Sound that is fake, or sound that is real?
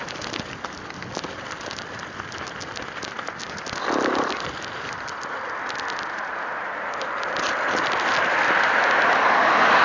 real